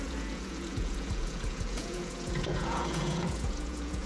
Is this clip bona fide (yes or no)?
no